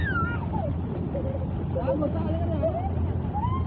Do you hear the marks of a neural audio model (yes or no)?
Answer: no